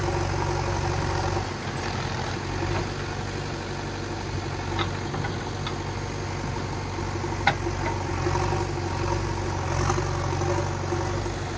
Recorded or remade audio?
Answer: recorded